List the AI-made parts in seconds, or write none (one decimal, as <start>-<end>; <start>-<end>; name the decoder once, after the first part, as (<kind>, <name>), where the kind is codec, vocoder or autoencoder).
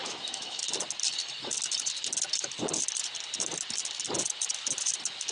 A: 0.0-0.6 (autoencoder, DAC-VAE)